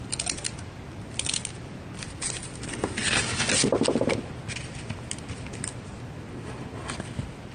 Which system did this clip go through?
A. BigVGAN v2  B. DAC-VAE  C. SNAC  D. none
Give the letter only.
D